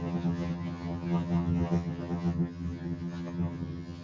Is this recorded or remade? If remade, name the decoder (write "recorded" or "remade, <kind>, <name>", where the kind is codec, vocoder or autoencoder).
remade, vocoder, HiFi-GAN